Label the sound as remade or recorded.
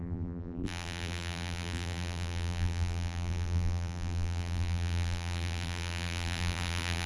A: remade